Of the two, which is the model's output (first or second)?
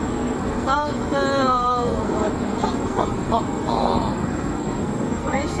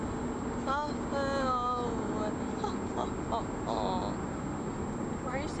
first